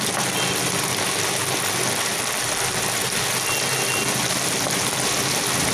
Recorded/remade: recorded